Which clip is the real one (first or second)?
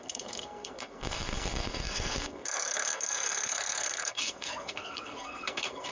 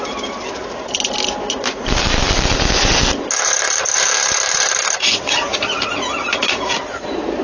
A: second